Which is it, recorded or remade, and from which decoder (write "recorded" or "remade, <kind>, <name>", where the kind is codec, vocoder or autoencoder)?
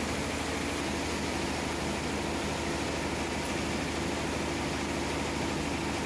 recorded